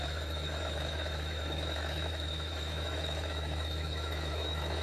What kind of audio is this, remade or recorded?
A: remade